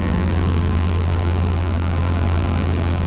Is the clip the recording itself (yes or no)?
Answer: no